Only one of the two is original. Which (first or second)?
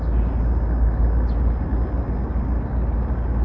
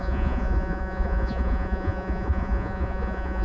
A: first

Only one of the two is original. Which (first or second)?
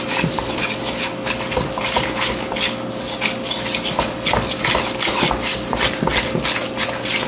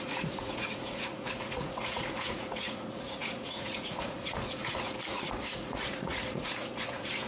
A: first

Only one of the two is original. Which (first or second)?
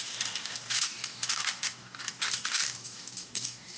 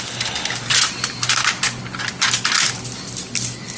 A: second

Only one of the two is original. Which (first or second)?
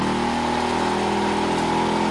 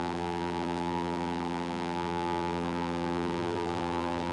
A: first